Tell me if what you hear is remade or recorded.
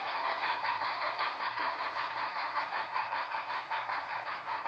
remade